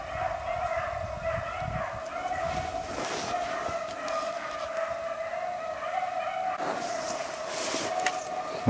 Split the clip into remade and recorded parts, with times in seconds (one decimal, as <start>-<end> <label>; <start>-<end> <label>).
0.0-8.7 recorded